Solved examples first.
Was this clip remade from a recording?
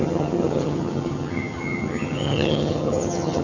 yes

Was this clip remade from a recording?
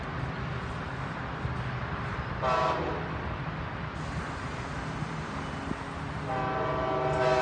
no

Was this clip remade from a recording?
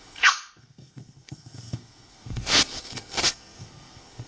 yes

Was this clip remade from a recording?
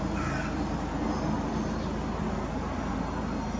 no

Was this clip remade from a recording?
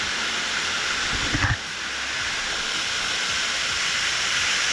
no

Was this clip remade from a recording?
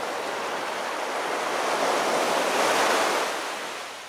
no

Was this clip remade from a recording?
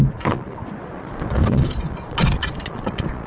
yes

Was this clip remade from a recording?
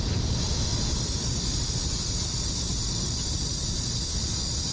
no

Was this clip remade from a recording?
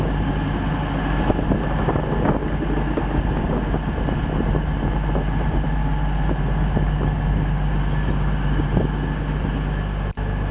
no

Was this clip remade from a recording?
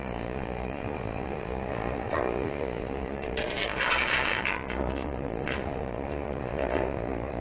yes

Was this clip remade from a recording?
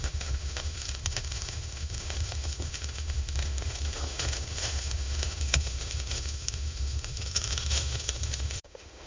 yes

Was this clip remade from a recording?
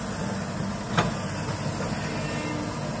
no